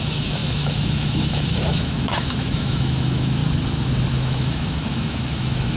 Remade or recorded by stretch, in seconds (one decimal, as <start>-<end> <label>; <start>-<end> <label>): 0.0-3.4 remade; 3.4-4.1 recorded; 4.1-5.8 remade